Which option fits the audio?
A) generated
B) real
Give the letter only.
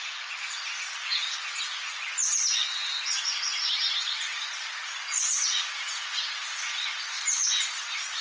B